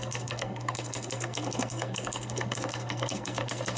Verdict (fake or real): fake